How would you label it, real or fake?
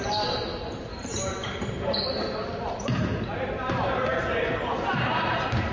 fake